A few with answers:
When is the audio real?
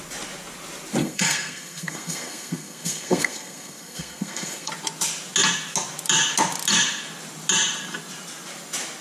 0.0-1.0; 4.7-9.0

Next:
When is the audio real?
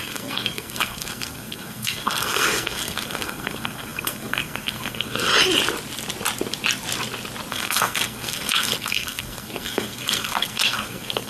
5.3-7.5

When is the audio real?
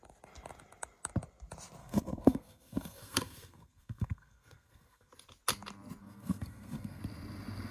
0.0-1.8; 5.1-6.0; 7.0-7.7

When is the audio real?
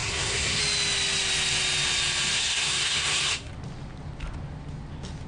0.6-2.3; 3.5-5.3